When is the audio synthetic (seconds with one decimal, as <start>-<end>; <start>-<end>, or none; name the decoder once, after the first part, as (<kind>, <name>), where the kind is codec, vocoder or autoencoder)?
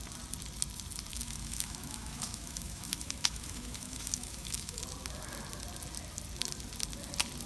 1.1-4.8 (autoencoder, DAC-VAE)